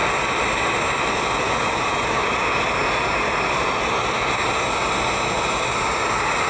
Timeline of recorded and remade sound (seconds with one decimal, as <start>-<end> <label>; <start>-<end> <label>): 0.0-0.8 remade; 0.8-6.5 recorded